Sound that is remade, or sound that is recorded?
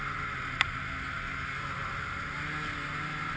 recorded